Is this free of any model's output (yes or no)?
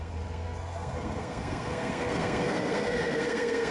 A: no